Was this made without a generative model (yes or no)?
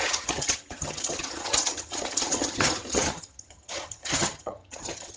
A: no